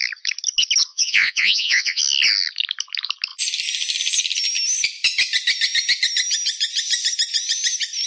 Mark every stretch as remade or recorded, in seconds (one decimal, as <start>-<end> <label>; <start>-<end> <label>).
0.0-0.9 recorded; 0.9-2.0 remade; 2.0-8.1 recorded